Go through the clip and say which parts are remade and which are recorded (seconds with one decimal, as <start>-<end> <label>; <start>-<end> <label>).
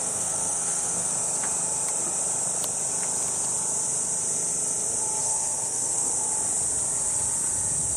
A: 0.0-1.1 remade; 1.1-5.2 recorded; 5.2-6.1 remade; 6.1-8.0 recorded